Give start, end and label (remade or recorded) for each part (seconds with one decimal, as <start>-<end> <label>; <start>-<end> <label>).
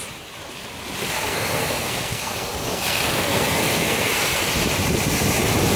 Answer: 0.0-1.0 recorded; 1.0-4.5 remade; 4.5-5.8 recorded